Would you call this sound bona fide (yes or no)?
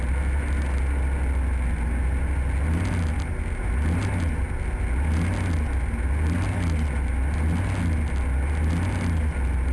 yes